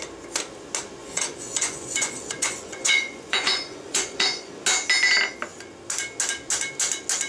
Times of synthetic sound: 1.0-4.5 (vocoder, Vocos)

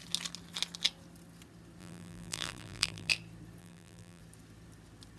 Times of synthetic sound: 1.8-3.1 (vocoder, BigVGAN v2); 3.6-4.2

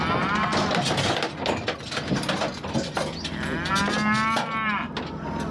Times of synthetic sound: none

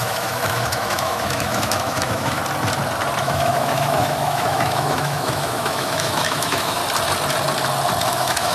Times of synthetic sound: 0.0-2.4 (autoencoder, DAC-VAE); 3.2-6.8; 8.1-8.5

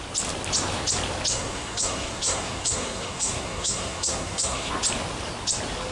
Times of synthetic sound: 1.3-4.7 (codec, SNAC)

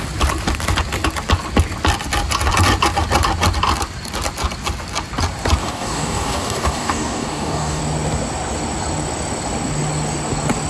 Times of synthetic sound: 5.6-7.8 (codec, DAC)

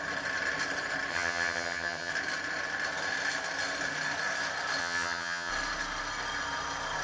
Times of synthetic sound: 1.1-2.1 (vocoder, HiFi-GAN); 4.8-5.5